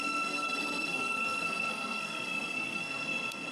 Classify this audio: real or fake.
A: fake